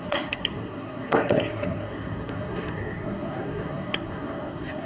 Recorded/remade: remade